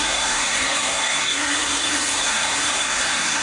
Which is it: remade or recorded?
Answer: remade